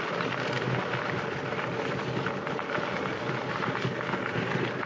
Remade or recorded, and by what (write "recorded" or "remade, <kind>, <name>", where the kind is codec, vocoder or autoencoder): recorded